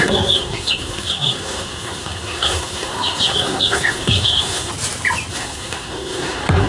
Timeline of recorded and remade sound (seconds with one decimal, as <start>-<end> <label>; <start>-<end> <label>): 0.0-4.7 remade; 4.7-5.3 recorded; 5.3-6.7 remade